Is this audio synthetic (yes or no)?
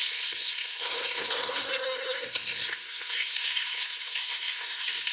yes